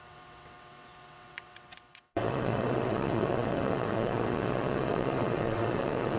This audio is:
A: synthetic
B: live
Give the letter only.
A